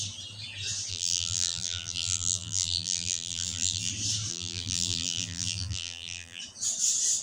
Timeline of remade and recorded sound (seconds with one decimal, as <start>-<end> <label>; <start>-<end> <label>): 0.0-0.9 recorded; 0.9-3.9 remade; 3.9-4.3 recorded; 4.3-6.4 remade; 6.4-7.2 recorded